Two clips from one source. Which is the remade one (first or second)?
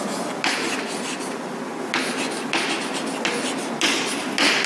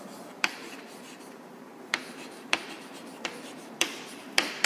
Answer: second